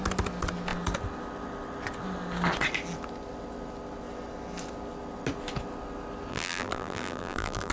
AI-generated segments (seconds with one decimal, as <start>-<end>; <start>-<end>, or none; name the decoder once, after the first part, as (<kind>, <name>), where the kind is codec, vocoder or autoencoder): 6.3-7.7 (vocoder, BigVGAN v2)